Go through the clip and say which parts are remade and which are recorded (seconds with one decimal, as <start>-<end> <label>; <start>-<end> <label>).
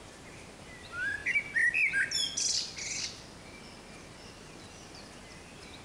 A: 0.0-1.2 remade; 1.2-4.7 recorded; 4.7-5.8 remade